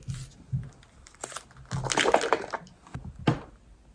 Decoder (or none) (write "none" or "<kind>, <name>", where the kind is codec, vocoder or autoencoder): none